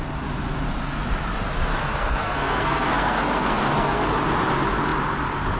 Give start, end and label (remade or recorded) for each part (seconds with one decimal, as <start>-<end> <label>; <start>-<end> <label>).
0.0-1.7 recorded; 1.7-4.0 remade; 4.0-5.6 recorded